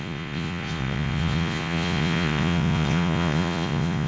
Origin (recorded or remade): remade